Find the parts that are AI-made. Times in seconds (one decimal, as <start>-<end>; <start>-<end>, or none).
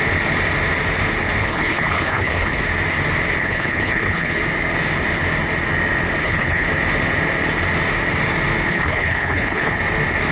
1.4-2.6; 3.4-4.4; 6.2-6.7; 8.7-9.8